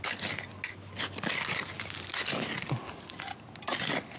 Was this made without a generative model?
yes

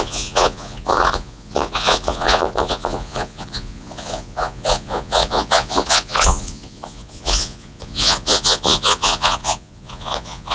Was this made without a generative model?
no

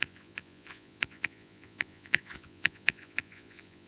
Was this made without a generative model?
no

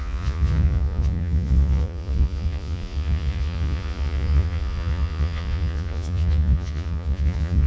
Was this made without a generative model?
no